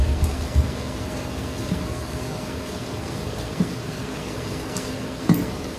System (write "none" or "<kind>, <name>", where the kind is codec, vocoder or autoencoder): codec, SNAC